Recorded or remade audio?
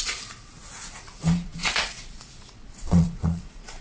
remade